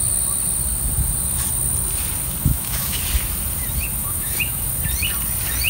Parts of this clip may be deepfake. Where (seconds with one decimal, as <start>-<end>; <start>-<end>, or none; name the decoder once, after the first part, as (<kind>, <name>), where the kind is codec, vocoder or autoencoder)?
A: 2.4-3.0 (autoencoder, DAC-VAE); 4.0-4.6